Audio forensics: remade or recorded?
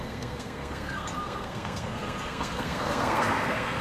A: remade